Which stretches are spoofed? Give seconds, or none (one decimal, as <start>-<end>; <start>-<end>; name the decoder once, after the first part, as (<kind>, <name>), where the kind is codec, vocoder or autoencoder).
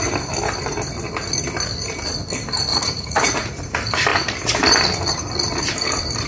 2.7-3.5 (vocoder, Vocos)